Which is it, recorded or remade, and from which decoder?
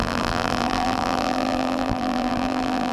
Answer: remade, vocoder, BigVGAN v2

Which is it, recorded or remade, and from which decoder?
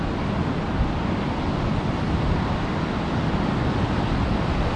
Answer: recorded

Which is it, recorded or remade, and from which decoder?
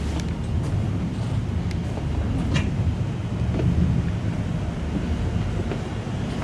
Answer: recorded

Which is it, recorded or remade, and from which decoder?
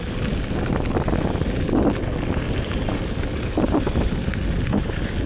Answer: recorded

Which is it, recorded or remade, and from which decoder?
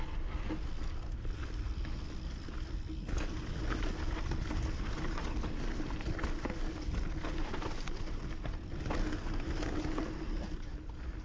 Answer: recorded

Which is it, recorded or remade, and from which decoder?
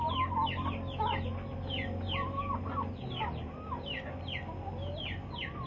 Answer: recorded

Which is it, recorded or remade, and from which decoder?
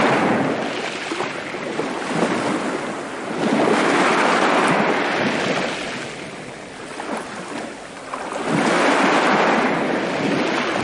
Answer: recorded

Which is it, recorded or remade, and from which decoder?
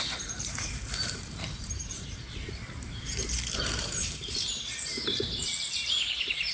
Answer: remade, vocoder, BigVGAN v2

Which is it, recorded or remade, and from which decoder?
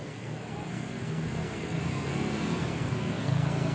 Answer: remade, codec, SNAC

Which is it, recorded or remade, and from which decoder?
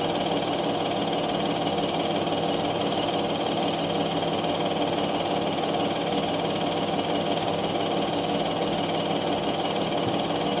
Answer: recorded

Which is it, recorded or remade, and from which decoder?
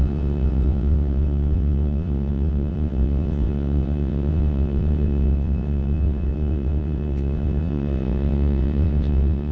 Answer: remade, vocoder, WaveNeXt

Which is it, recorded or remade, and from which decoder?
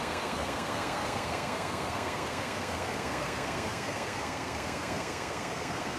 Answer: remade, codec, SNAC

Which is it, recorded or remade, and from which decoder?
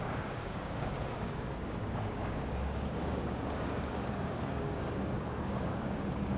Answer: remade, codec, DAC